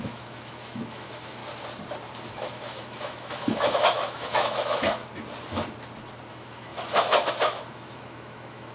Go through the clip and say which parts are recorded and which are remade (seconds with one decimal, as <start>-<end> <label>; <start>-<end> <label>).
0.0-1.4 remade; 1.4-2.3 recorded; 2.3-5.0 remade; 5.0-6.3 recorded; 6.3-8.7 remade